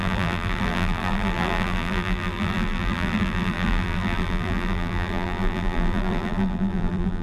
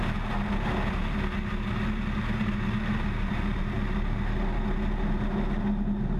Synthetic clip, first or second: first